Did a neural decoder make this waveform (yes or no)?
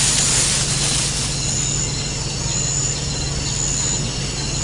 no